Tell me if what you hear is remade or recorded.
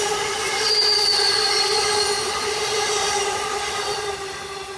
remade